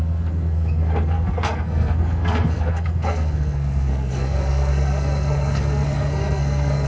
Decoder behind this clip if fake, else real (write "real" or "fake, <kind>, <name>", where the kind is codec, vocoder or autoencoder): fake, codec, SNAC